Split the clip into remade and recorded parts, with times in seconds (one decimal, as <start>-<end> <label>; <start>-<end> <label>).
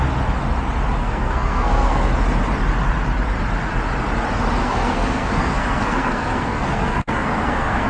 0.0-1.0 recorded; 1.0-2.1 remade; 2.1-4.6 recorded; 4.6-7.9 remade